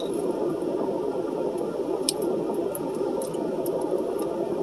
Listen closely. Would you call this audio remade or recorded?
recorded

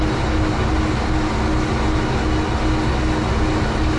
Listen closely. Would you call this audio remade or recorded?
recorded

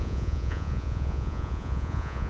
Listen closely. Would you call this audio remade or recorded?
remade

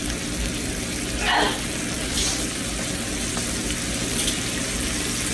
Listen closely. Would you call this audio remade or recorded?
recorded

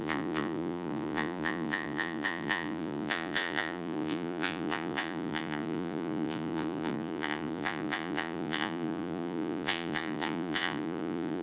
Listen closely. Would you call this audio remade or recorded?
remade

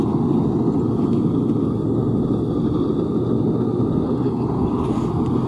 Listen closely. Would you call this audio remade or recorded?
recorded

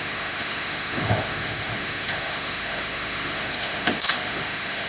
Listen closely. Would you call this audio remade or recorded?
remade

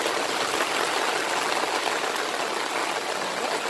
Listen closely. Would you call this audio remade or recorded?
recorded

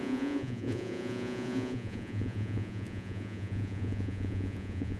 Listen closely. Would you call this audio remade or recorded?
remade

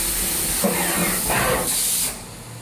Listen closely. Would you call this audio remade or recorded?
recorded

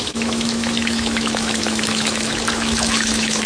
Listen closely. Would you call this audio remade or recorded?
remade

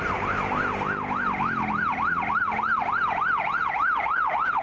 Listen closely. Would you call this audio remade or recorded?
recorded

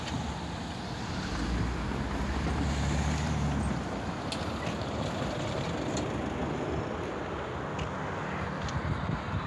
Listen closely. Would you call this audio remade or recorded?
recorded